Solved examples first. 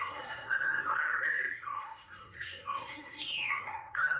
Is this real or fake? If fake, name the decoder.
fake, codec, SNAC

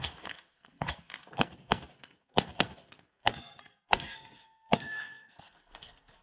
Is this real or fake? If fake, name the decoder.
fake, codec, SNAC